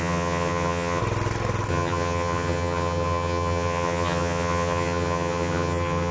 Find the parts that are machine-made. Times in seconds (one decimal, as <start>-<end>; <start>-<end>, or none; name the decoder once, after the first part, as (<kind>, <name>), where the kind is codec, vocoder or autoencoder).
0.0-1.0 (vocoder, HiFi-GAN); 1.7-6.1

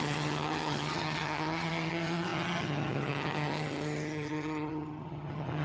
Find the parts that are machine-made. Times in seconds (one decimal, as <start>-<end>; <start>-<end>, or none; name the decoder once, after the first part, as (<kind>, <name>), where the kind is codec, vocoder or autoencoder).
0.0-5.6 (vocoder, HiFi-GAN)

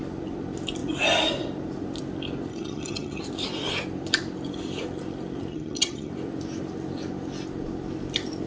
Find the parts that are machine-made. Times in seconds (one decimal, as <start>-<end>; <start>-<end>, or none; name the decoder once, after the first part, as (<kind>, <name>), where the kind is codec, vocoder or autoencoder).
2.5-3.2 (vocoder, HiFi-GAN); 5.5-6.1